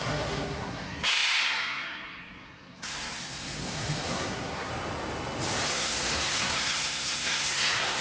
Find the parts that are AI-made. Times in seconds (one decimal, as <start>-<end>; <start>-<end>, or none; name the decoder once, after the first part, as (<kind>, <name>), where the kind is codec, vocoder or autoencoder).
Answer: 0.0-4.7 (codec, SNAC); 5.7-8.0